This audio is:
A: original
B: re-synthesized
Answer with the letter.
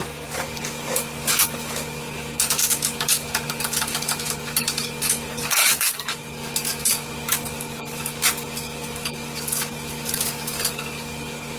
B